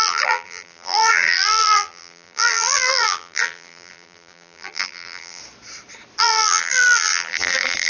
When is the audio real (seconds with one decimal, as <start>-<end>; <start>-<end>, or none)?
5.4-6.2